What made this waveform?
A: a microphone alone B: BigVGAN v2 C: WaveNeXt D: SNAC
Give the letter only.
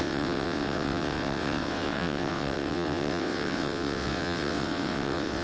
C